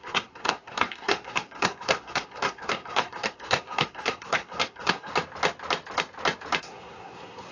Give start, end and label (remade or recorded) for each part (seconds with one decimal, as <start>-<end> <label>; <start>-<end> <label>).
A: 0.0-5.1 remade; 5.1-6.6 recorded; 6.6-7.5 remade